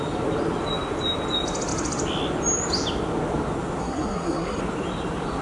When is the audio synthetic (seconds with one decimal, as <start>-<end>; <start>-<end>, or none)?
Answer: 3.8-4.6